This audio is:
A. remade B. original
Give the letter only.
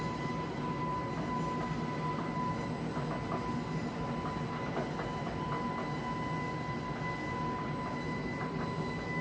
B